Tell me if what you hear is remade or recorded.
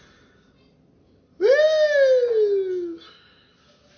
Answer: recorded